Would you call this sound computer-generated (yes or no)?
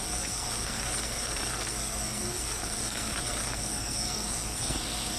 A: yes